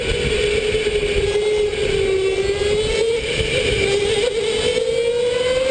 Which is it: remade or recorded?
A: recorded